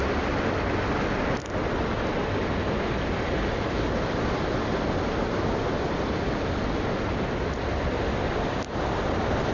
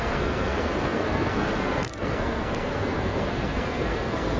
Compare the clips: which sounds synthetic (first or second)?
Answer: second